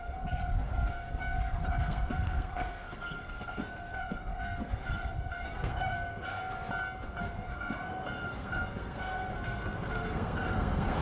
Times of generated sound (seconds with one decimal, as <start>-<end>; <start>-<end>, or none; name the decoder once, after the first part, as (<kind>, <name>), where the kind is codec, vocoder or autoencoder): 0.0-6.4 (codec, SNAC); 7.2-11.0